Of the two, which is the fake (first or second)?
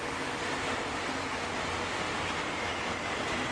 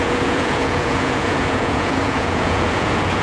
second